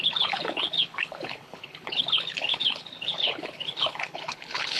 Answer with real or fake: fake